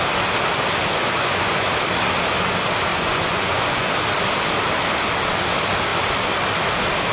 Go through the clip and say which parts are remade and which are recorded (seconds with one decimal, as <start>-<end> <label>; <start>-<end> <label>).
0.0-1.2 recorded; 1.2-1.7 remade; 1.7-2.9 recorded; 2.9-3.9 remade; 3.9-7.1 recorded